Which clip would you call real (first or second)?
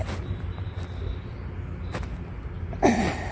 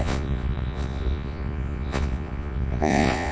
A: first